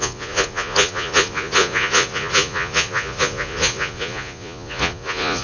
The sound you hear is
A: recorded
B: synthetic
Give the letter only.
B